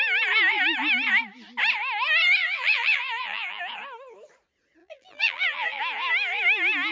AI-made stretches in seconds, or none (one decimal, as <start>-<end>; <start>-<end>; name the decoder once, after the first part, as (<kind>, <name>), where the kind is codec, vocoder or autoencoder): 2.4-3.6 (vocoder, BigVGAN v2); 4.8-5.8